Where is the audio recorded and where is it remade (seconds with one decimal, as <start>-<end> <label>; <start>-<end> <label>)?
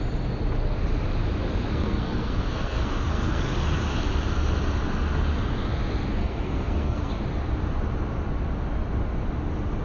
0.0-1.7 recorded; 1.7-3.4 remade; 3.4-6.2 recorded; 6.2-7.1 remade; 7.1-9.8 recorded